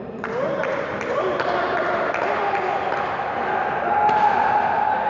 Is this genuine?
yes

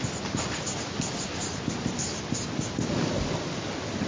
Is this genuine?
yes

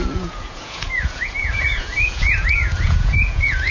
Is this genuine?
no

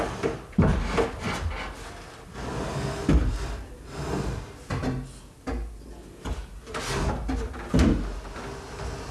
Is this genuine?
yes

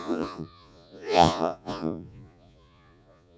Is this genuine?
no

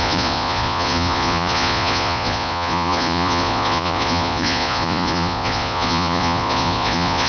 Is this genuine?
no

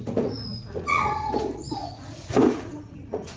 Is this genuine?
no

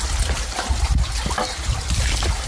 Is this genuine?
yes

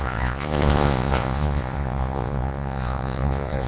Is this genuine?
no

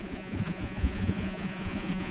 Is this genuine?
no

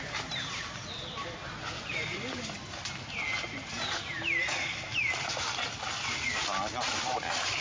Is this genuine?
yes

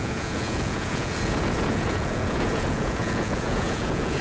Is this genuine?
no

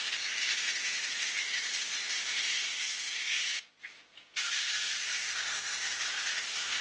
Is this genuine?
yes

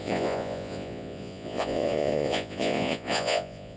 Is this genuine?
no